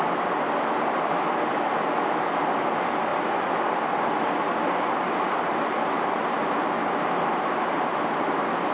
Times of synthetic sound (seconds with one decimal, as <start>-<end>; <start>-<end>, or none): none